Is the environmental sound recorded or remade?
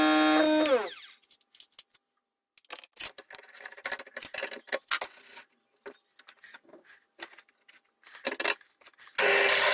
recorded